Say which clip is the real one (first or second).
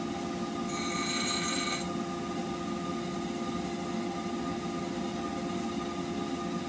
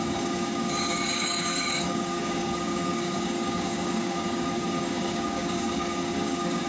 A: first